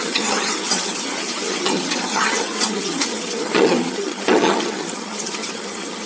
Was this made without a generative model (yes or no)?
no